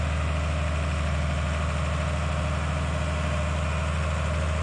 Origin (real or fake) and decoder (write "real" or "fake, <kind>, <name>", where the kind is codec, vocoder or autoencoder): real